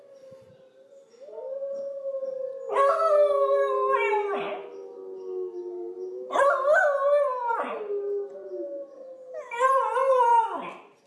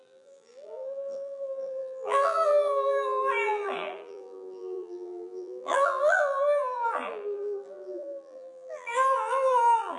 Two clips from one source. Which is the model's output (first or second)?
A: second